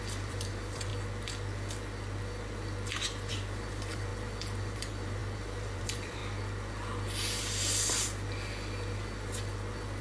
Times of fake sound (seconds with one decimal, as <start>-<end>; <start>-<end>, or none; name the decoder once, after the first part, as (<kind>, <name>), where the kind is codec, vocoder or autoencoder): 0.0-0.9 (vocoder, BigVGAN v2); 3.3-4.1; 4.6-6.2